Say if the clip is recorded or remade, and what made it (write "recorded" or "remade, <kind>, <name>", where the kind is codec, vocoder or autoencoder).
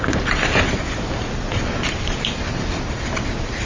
recorded